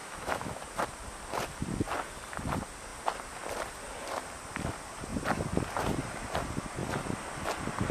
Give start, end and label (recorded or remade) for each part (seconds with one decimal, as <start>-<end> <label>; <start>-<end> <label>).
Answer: 0.0-0.6 remade; 0.6-7.9 recorded